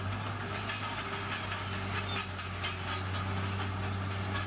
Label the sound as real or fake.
real